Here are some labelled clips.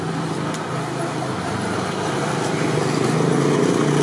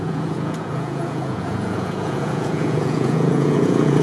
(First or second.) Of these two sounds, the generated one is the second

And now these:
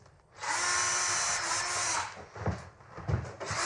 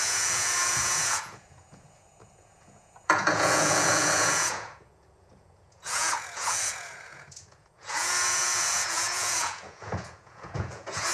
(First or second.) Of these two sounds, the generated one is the second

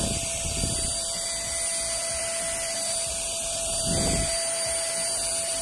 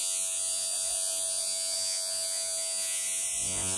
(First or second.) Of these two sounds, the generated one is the second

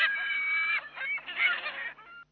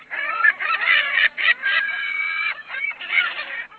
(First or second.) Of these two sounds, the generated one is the second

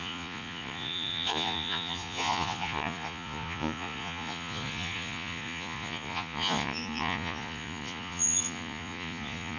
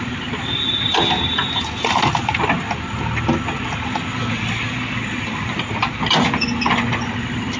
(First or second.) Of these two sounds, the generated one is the first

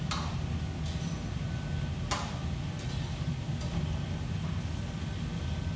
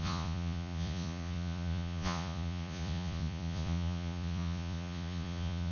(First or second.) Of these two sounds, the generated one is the second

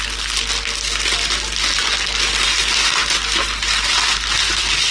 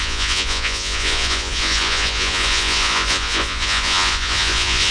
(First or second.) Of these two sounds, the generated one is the second